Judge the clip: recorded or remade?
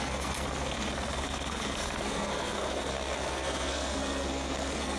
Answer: remade